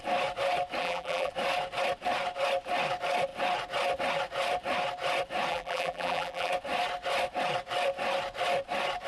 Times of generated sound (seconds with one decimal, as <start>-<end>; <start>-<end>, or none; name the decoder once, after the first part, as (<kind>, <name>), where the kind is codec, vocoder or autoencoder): 0.8-1.3 (vocoder, BigVGAN v2); 5.5-6.5